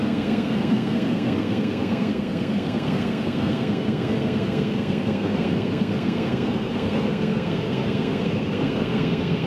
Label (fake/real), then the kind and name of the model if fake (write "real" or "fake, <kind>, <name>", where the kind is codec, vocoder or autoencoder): fake, codec, SNAC